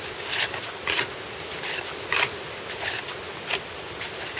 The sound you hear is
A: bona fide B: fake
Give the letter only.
A